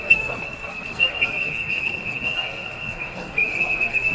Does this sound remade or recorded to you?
remade